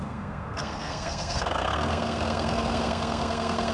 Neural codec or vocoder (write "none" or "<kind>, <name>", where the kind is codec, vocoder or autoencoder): codec, SNAC